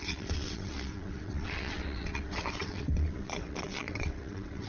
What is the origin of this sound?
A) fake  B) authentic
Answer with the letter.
A